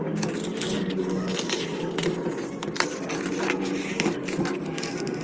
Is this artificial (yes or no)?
no